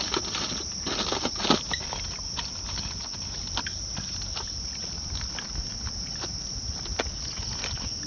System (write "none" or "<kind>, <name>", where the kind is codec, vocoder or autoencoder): none